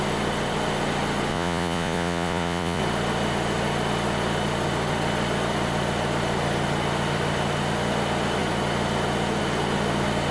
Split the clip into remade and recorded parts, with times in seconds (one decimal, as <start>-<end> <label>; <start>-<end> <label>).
0.0-1.3 recorded; 1.3-2.8 remade; 2.8-10.3 recorded